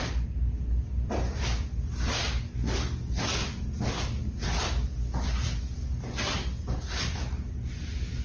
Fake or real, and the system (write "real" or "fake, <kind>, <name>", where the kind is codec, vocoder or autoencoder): real